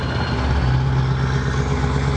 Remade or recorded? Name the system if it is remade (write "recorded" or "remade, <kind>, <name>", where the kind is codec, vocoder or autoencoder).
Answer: recorded